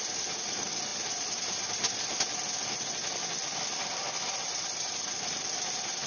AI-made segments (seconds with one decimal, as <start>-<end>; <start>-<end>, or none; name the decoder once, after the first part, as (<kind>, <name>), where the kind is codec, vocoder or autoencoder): none